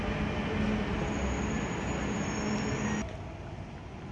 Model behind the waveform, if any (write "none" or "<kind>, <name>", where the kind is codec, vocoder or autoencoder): none